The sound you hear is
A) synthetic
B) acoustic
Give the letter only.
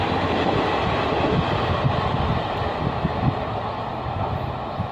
B